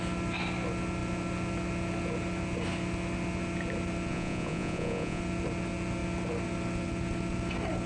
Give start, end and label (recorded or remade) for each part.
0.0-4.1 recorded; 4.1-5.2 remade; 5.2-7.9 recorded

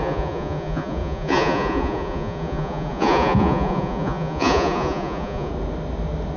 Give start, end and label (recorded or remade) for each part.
0.0-5.5 remade; 5.5-6.4 recorded

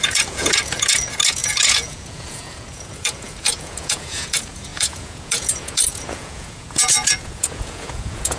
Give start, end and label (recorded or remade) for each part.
0.0-8.4 remade

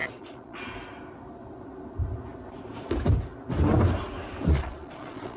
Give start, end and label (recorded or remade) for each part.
0.0-0.6 remade; 0.6-4.5 recorded; 4.5-5.4 remade

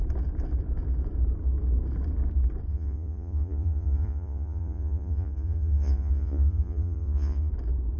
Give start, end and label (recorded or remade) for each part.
0.0-2.7 recorded; 2.7-7.5 remade; 7.5-8.0 recorded

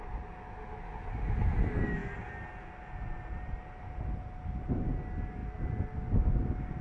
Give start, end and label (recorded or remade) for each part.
0.0-6.8 recorded

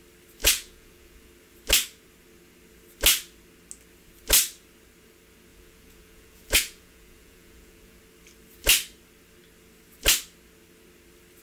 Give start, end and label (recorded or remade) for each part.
0.0-0.4 recorded; 0.4-1.3 remade; 1.3-5.5 recorded; 5.5-8.0 remade; 8.0-11.4 recorded

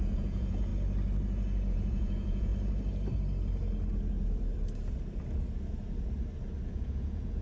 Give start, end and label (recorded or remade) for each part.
0.0-0.7 remade; 0.7-1.7 recorded; 1.7-2.5 remade; 2.5-6.7 recorded; 6.7-7.4 remade